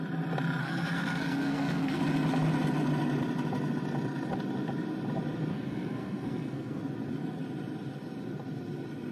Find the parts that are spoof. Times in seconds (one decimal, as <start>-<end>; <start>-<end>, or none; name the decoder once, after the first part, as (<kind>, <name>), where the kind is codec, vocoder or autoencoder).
0.6-2.0 (codec, SNAC); 5.5-6.8